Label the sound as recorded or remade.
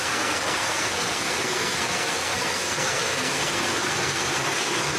remade